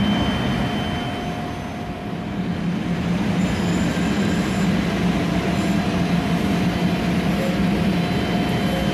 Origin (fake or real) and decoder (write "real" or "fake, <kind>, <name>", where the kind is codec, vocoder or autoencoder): real